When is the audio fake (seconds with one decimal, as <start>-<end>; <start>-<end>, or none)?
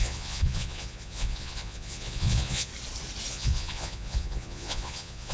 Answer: 0.0-2.7; 3.3-5.3